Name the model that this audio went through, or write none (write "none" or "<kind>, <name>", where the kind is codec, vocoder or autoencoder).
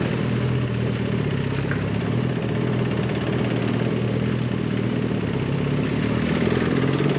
none